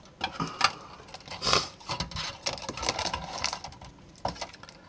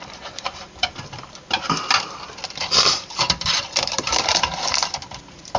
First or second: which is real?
first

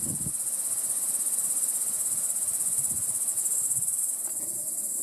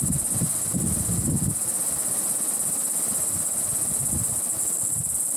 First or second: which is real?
second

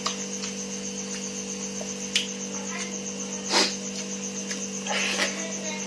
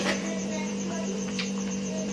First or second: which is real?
first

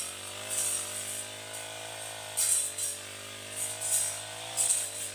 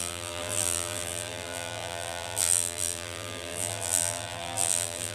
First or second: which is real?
first